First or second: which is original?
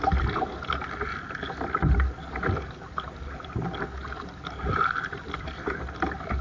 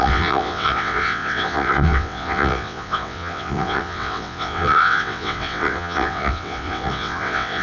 first